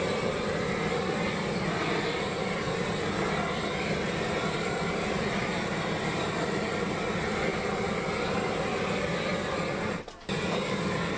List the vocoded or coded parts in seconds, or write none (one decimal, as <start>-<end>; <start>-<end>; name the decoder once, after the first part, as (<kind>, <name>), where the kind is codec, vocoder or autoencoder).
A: none